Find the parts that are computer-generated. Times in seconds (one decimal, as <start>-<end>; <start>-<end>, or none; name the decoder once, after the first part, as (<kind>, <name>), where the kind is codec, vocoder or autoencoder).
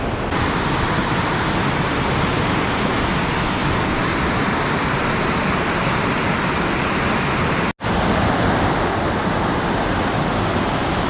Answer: 3.6-5.5 (vocoder, BigVGAN v2); 9.2-9.8